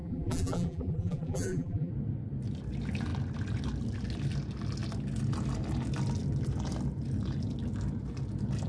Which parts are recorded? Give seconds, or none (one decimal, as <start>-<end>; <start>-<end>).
1.9-8.7